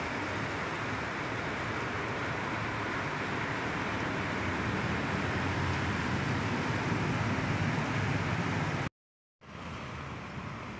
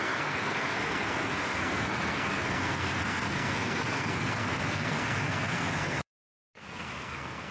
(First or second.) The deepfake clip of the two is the second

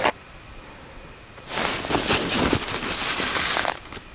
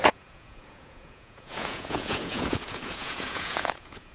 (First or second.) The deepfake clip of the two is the second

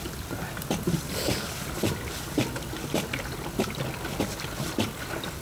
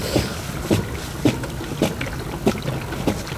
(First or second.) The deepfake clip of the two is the first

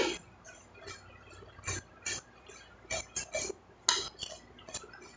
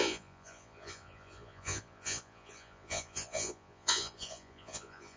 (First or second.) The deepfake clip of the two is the second